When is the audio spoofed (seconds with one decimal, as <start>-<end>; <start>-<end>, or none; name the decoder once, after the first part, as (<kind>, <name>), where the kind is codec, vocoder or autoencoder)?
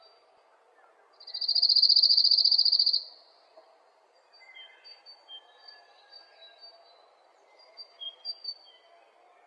2.1-4.4 (vocoder, BigVGAN v2); 7.3-8.3